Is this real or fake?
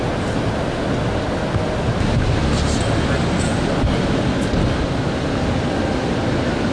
real